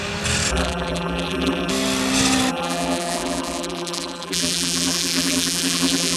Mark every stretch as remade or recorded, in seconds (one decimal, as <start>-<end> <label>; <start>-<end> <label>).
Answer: 0.0-0.5 recorded; 0.5-1.7 remade; 1.7-2.5 recorded; 2.5-6.2 remade